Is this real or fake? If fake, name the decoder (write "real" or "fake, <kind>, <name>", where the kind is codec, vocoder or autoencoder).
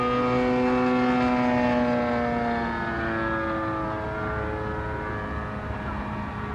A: real